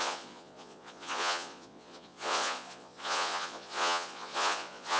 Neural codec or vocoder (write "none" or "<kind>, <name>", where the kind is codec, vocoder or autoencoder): vocoder, Vocos